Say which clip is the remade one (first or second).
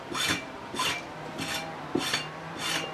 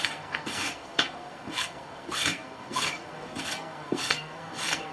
second